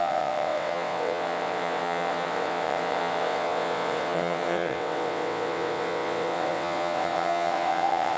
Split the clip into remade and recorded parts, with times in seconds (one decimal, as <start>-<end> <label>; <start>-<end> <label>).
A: 0.0-8.2 remade